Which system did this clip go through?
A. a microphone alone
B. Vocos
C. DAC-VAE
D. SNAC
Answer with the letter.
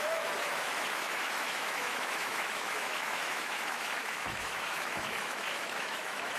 C